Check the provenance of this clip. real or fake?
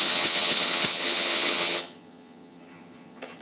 fake